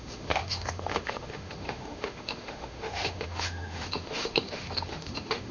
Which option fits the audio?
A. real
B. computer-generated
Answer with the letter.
B